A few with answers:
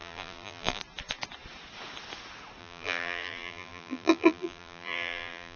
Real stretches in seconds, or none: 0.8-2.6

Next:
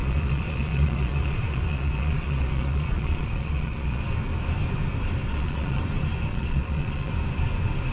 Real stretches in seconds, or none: 4.0-5.3; 5.8-6.3; 7.1-7.9